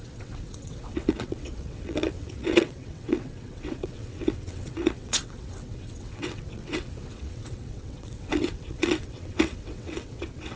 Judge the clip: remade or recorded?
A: remade